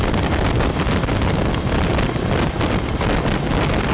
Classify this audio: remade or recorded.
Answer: recorded